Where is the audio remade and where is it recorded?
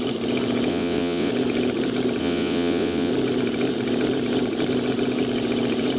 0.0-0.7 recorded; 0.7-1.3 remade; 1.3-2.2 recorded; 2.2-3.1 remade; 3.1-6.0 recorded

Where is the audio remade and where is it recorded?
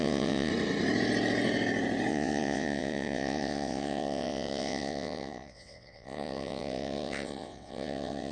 0.0-0.5 remade; 0.5-2.1 recorded; 2.1-8.3 remade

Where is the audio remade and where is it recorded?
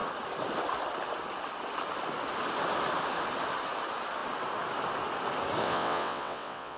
0.0-5.6 recorded; 5.6-6.8 remade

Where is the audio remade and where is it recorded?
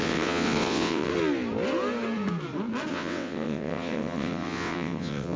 0.0-1.1 remade; 1.1-2.9 recorded; 2.9-5.4 remade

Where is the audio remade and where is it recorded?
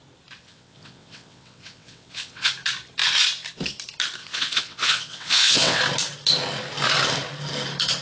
0.0-0.4 recorded; 0.4-2.5 remade; 2.5-4.2 recorded; 4.2-5.8 remade; 5.8-8.0 recorded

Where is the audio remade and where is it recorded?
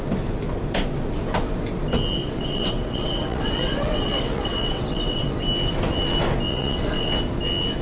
0.0-2.2 recorded; 2.2-5.3 remade; 5.3-6.5 recorded; 6.5-7.1 remade; 7.1-7.8 recorded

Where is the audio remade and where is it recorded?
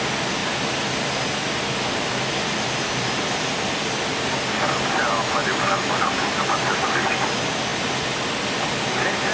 0.0-9.3 recorded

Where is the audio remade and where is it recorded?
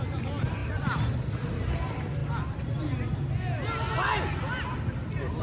0.0-5.4 recorded